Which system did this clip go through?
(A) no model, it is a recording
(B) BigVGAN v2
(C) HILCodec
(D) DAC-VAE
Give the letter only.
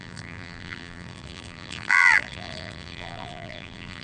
B